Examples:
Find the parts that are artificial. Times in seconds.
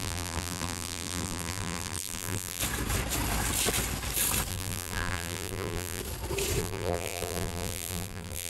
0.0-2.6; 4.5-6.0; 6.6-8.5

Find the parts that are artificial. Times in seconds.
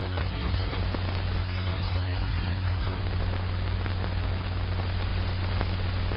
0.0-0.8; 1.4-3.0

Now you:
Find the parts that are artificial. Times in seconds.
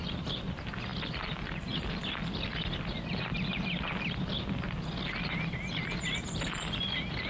none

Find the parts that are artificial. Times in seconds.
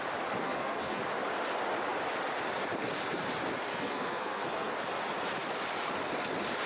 0.4-1.0; 3.7-4.7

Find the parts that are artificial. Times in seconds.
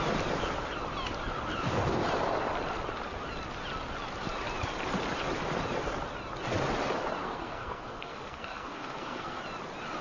7.2-9.4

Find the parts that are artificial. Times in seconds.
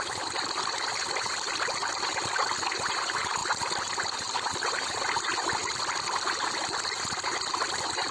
none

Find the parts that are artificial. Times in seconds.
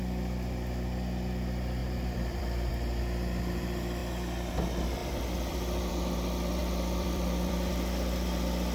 1.8-2.7; 5.0-5.9; 6.6-7.7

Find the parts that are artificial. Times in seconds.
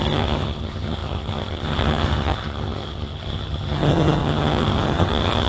0.0-5.5